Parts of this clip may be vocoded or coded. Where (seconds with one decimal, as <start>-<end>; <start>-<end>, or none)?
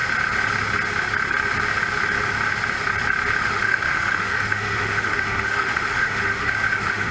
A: 3.4-7.1